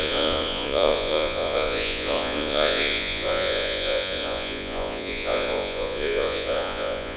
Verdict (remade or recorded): remade